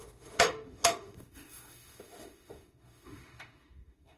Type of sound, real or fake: fake